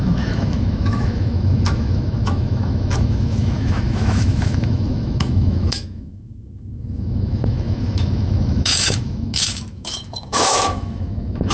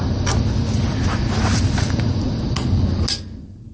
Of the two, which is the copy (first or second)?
first